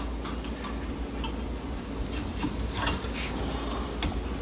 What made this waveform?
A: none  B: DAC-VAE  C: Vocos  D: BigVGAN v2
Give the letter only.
A